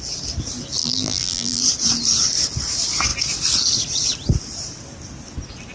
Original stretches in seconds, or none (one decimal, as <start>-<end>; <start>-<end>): 0.0-0.8; 1.6-5.7